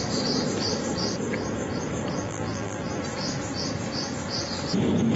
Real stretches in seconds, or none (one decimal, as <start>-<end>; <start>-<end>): 0.0-2.2; 2.9-5.2